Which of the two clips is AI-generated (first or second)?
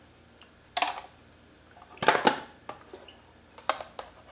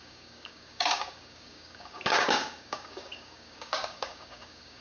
second